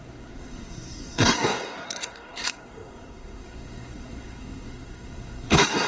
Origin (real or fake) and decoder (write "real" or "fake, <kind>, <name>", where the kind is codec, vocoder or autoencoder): fake, codec, SNAC